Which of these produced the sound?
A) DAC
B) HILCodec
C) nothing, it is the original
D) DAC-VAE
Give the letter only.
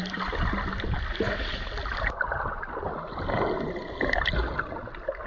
C